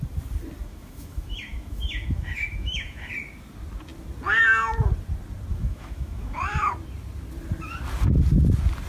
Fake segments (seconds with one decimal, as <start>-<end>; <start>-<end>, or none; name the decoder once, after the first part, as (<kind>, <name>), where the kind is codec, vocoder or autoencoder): 0.6-3.1 (autoencoder, DAC-VAE); 5.5-6.4